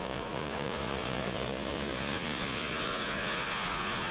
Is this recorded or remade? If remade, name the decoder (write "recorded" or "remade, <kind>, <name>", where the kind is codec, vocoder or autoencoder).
remade, vocoder, Vocos